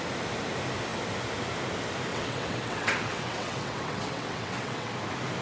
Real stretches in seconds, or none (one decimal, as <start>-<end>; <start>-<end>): 0.0-2.1; 4.9-5.4